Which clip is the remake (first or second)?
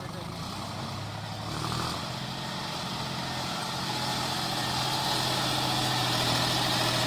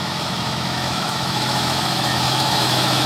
second